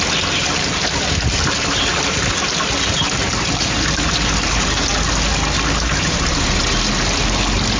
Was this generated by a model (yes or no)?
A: no